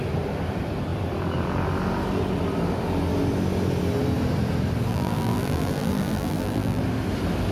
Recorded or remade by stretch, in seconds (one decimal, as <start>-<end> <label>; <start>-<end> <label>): 0.0-4.9 recorded; 4.9-6.8 remade; 6.8-7.5 recorded